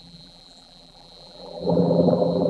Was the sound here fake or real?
fake